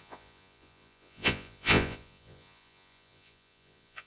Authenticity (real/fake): fake